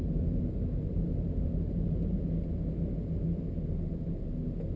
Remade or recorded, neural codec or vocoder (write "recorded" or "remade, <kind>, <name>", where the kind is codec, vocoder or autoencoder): recorded